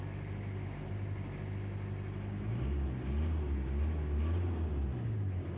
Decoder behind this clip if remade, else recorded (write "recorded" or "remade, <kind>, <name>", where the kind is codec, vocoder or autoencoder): recorded